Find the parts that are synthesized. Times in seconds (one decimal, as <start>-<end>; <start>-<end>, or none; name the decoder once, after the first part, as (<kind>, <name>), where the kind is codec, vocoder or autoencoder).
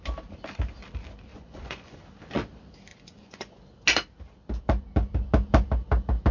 1.3-2.0 (vocoder, Vocos); 2.9-3.6